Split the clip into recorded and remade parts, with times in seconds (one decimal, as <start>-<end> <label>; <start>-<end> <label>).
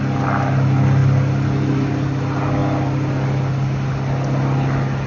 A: 0.0-5.1 recorded